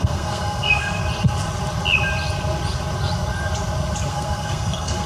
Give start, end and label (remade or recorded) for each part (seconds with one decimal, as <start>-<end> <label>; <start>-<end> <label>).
0.0-1.0 remade; 1.0-4.1 recorded; 4.1-5.1 remade